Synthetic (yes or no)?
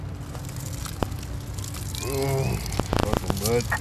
no